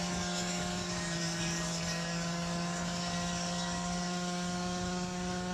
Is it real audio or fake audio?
fake